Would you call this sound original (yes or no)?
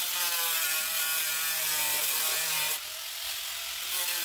no